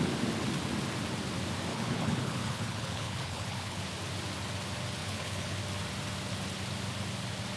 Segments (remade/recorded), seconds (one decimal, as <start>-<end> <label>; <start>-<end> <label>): 0.0-1.7 recorded; 1.7-3.8 remade; 3.8-5.0 recorded; 5.0-5.6 remade; 5.6-7.6 recorded